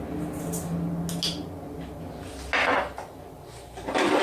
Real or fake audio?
real